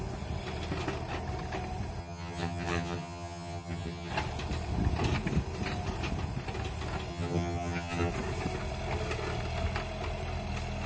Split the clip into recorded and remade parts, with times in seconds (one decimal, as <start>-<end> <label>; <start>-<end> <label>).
0.0-2.0 recorded; 2.0-4.1 remade; 4.1-7.1 recorded; 7.1-8.1 remade; 8.1-10.9 recorded